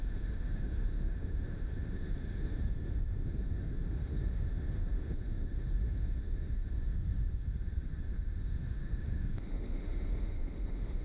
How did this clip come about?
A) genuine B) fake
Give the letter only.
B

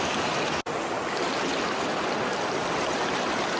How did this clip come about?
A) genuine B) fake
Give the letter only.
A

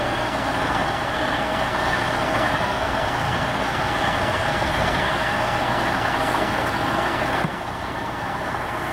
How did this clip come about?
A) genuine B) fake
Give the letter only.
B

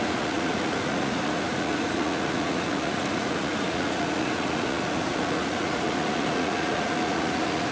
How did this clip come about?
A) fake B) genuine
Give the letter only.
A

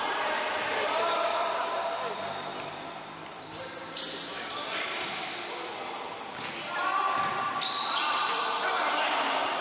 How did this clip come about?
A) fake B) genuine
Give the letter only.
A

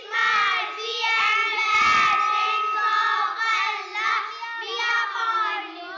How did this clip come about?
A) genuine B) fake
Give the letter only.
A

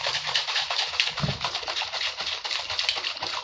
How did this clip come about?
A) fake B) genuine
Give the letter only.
A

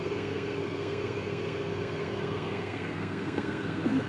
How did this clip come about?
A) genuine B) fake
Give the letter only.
B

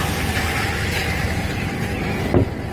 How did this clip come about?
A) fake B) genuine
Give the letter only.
B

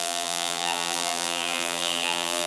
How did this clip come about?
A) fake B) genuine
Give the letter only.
A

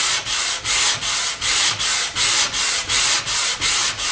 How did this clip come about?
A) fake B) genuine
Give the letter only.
B